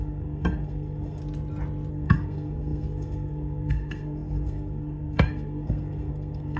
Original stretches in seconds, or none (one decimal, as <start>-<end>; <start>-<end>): 1.2-1.9